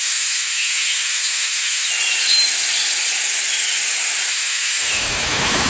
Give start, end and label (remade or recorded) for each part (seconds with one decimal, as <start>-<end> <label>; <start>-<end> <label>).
0.0-1.9 remade; 1.9-4.3 recorded; 4.3-5.7 remade